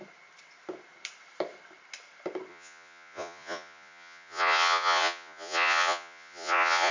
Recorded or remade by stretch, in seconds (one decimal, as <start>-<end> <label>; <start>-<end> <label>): 0.0-2.5 recorded; 2.5-6.9 remade